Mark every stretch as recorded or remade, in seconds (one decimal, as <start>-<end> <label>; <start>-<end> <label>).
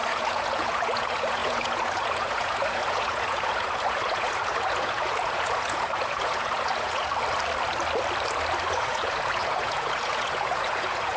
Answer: 0.0-7.1 remade; 7.1-8.7 recorded; 8.7-11.2 remade